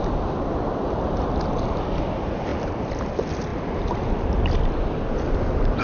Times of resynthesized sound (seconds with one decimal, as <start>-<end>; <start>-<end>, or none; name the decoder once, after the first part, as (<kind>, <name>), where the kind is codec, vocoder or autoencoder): 2.5-3.1 (vocoder, BigVGAN v2); 3.5-4.8